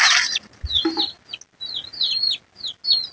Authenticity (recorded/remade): recorded